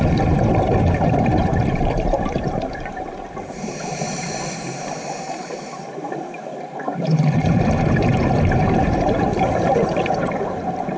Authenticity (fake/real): fake